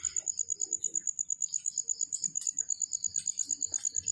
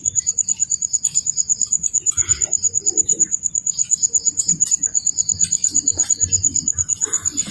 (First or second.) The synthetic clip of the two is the second